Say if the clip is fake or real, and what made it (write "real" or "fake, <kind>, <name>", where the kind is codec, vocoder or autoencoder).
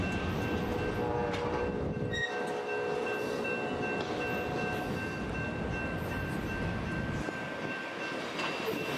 real